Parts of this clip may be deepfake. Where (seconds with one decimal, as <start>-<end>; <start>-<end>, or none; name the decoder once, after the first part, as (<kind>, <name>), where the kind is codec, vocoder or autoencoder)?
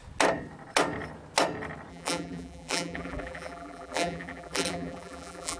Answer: 1.9-5.6 (vocoder, BigVGAN v2)